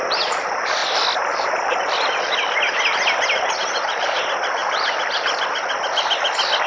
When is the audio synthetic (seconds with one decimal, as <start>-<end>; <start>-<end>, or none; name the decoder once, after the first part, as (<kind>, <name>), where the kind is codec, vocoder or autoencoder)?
none